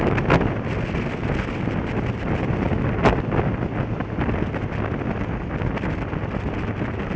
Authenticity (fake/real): real